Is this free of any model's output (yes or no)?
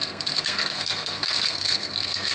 no